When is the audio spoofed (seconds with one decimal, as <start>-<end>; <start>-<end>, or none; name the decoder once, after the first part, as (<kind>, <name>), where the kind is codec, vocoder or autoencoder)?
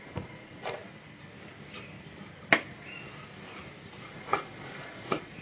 0.0-0.8 (vocoder, Vocos); 4.0-5.4